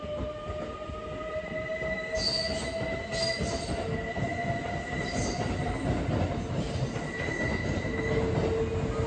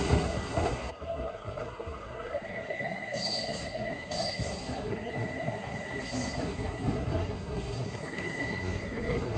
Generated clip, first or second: second